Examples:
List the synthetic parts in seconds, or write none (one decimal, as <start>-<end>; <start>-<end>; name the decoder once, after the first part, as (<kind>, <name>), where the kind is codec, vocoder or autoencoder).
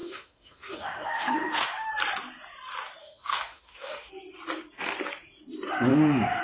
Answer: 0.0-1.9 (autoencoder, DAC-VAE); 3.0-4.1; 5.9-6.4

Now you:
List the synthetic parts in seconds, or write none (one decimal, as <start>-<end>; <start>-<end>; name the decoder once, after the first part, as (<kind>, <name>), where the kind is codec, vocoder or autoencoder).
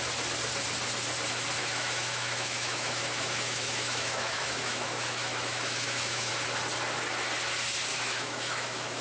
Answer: 1.6-6.3 (autoencoder, DAC-VAE); 7.9-9.0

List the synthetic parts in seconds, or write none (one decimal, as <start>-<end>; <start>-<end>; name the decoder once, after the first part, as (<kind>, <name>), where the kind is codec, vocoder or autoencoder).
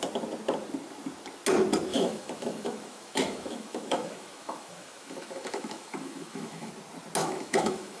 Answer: 1.9-6.7 (autoencoder, DAC-VAE); 7.2-8.0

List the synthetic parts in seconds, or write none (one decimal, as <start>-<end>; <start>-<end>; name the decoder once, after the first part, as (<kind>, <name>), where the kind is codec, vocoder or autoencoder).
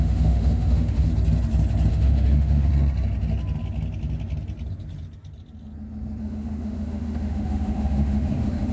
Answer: 0.0-1.1 (autoencoder, DAC-VAE); 1.9-2.7; 6.2-8.7